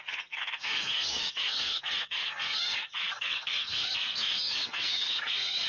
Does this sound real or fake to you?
fake